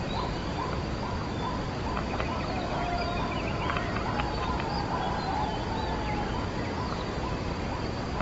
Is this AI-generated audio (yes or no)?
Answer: no